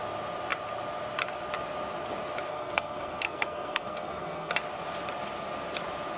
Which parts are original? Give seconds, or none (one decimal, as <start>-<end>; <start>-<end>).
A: 0.0-2.5; 4.5-6.2